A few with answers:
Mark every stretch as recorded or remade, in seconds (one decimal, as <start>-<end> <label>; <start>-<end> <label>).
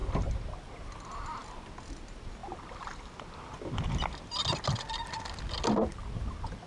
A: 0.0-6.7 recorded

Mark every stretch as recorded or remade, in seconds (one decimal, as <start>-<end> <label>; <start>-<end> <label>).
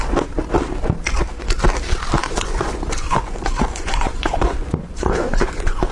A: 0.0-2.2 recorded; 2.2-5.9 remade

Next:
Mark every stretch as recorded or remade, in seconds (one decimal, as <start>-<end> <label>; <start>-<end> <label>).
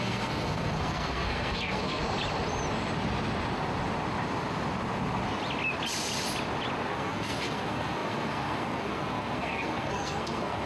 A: 0.0-2.0 remade; 2.0-6.9 recorded; 6.9-10.7 remade